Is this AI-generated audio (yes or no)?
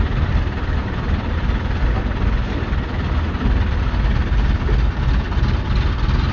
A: no